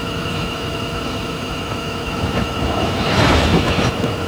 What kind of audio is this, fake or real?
fake